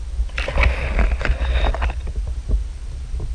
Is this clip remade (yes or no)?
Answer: no